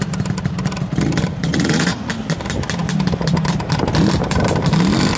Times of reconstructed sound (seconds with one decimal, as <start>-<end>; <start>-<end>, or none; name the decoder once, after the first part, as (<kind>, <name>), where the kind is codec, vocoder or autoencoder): 1.5-2.1 (vocoder, Vocos)